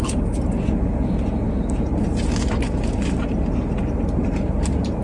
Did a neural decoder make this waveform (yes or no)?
no